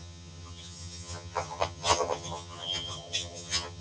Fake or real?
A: fake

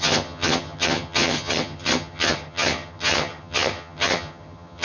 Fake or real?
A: fake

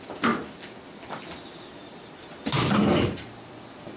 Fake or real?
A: real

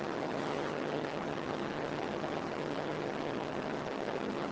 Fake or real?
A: fake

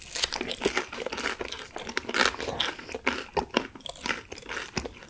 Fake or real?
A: real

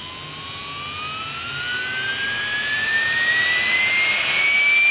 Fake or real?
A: real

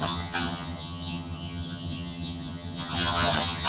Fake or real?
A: fake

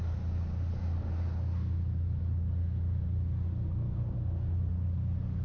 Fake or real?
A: real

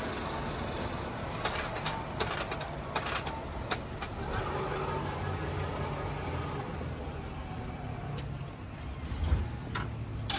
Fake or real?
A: real